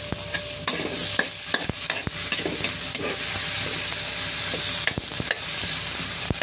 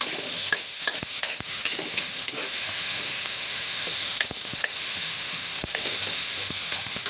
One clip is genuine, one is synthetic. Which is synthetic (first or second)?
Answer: second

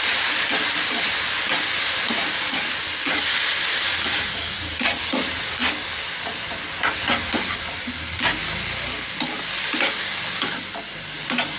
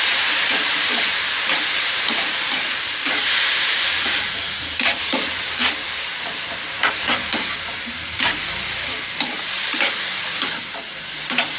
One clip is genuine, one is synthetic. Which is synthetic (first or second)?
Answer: second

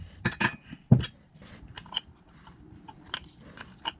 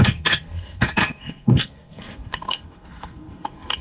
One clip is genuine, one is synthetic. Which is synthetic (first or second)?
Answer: second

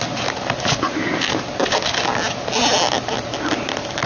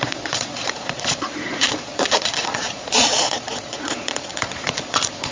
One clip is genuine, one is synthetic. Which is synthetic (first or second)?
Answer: second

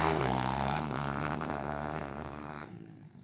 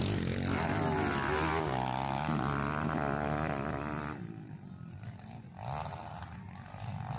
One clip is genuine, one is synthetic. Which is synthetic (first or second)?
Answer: first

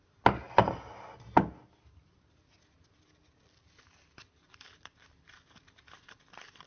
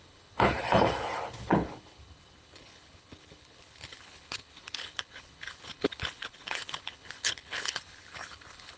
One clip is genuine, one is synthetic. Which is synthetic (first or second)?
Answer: second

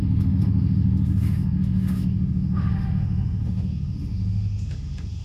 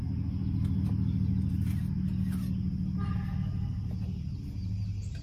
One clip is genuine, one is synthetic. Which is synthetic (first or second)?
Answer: first